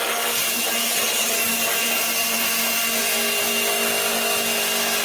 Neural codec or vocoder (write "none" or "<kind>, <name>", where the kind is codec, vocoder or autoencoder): none